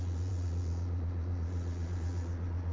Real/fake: fake